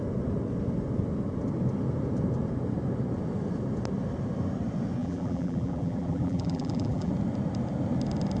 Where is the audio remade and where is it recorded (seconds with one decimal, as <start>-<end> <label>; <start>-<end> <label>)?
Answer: 0.0-5.0 recorded; 5.0-7.1 remade; 7.1-8.4 recorded